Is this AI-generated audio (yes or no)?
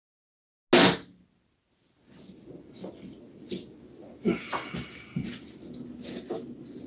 no